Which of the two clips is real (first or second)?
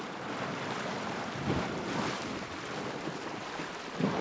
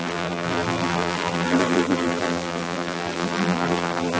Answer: first